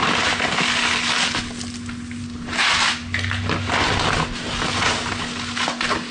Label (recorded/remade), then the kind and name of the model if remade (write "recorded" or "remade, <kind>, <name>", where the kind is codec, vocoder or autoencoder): recorded